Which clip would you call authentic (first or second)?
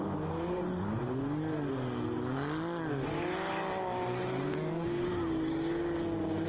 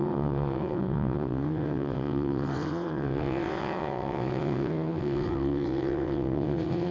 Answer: first